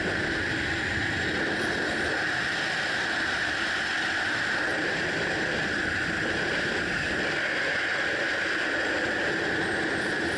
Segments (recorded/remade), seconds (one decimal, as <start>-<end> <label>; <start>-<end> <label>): 0.0-10.4 recorded